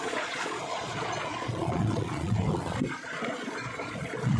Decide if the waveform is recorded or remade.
remade